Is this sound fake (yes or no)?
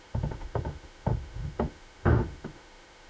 yes